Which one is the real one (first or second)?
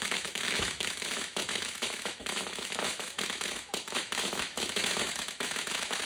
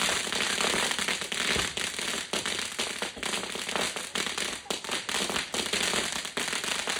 second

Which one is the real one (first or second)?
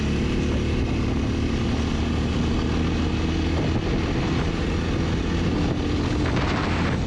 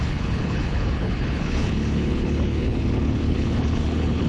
first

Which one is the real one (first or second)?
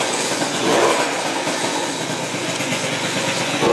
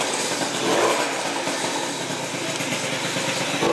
second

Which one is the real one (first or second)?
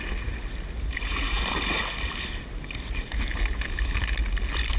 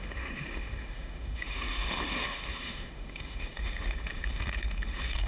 first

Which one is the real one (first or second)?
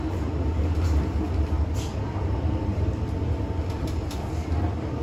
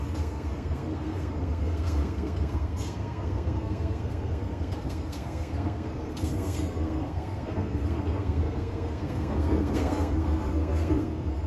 first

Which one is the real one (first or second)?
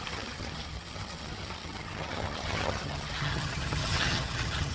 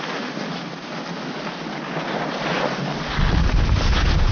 second